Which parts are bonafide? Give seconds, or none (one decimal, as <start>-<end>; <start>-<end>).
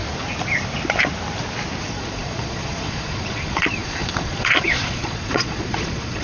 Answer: 0.0-1.8